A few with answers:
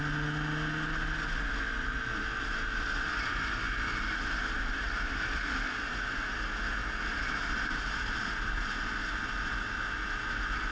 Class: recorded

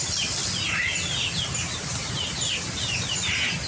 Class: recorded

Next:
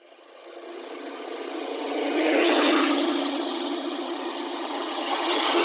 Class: remade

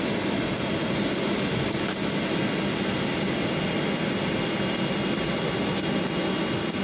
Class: recorded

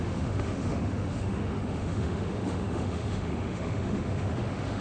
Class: remade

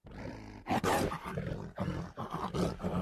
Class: recorded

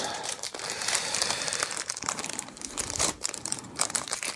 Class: remade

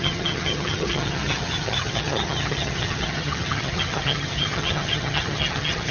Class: remade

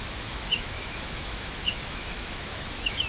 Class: remade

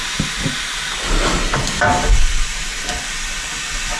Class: recorded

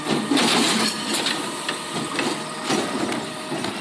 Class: recorded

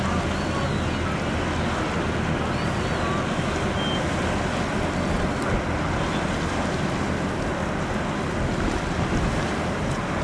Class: recorded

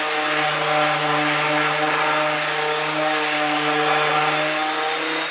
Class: recorded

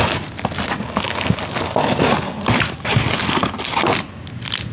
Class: recorded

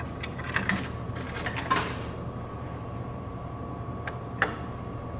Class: remade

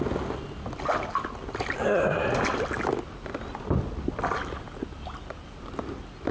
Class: recorded